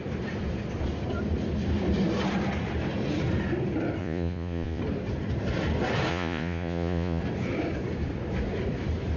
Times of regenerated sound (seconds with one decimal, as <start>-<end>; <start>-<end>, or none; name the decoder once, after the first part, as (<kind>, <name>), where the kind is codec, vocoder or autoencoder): 4.0-4.8 (vocoder, Vocos); 6.1-7.2